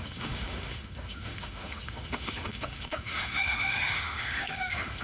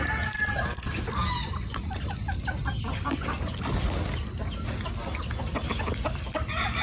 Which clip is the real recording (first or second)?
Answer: second